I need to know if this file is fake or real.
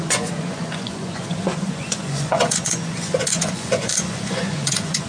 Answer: fake